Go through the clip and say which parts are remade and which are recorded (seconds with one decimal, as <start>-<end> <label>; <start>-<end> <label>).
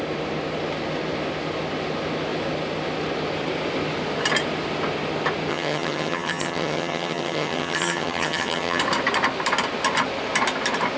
0.0-5.5 recorded; 5.5-8.8 remade; 8.8-11.0 recorded